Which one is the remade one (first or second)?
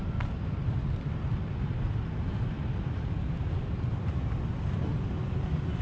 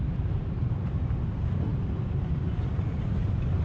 second